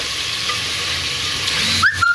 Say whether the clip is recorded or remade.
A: remade